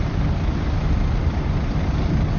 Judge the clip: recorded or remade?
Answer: recorded